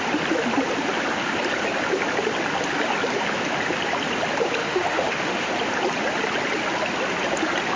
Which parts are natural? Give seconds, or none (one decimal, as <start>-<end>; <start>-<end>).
0.0-4.6; 5.5-7.8